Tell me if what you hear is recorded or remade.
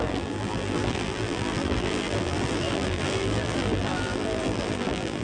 remade